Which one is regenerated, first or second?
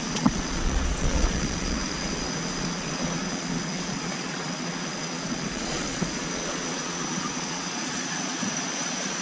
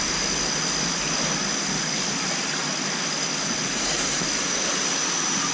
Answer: first